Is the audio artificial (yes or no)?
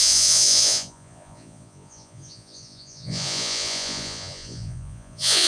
yes